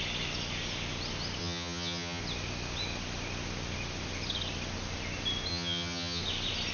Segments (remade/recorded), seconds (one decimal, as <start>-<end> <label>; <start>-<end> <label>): 0.0-1.4 recorded; 1.4-2.2 remade; 2.2-5.5 recorded; 5.5-6.2 remade; 6.2-6.7 recorded